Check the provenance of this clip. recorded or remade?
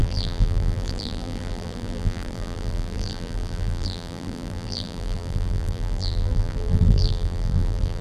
remade